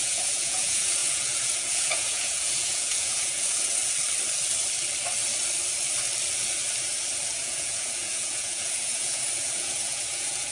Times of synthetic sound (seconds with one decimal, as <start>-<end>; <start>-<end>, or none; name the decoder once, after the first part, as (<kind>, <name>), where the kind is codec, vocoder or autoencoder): 0.0-3.8 (vocoder, Vocos); 7.2-10.5